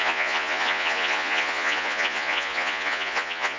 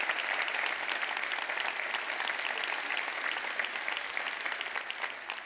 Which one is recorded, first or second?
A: second